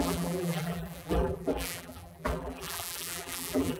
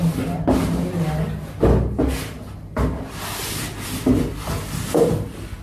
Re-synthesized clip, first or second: first